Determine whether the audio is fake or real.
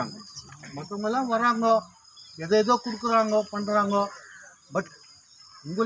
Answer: real